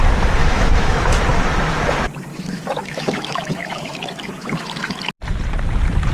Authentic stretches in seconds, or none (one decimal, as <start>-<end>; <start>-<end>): 0.0-0.4; 1.2-2.3; 5.0-6.1